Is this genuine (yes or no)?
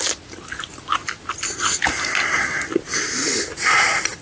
yes